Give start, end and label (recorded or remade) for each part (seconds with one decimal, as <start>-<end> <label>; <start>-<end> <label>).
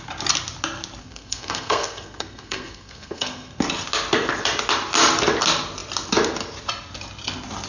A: 0.0-1.0 recorded; 1.0-3.6 remade; 3.6-7.7 recorded